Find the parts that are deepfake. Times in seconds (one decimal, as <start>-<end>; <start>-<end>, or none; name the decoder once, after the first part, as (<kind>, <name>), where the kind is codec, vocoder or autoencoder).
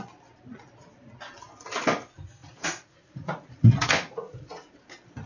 2.4-4.8 (vocoder, Vocos)